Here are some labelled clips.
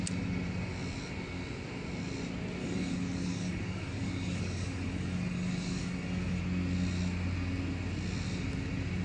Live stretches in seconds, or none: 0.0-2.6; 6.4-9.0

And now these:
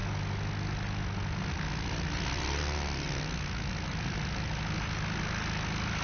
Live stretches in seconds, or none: 0.0-6.0